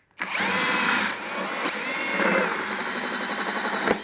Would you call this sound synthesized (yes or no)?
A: no